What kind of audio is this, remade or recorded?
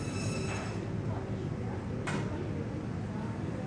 recorded